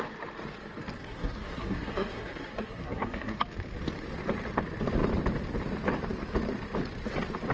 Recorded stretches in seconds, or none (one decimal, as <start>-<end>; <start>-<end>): 0.0-1.0; 3.4-7.5